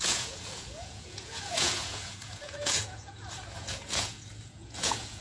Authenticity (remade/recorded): remade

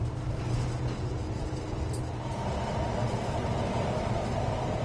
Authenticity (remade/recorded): recorded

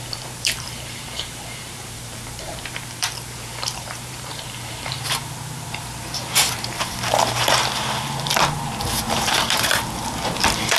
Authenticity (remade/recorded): remade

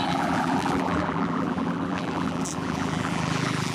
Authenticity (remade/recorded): remade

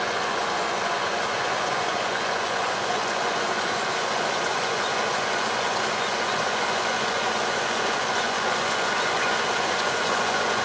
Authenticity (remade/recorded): remade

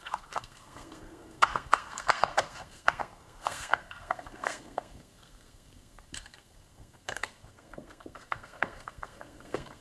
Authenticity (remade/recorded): remade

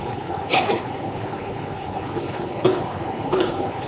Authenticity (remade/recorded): remade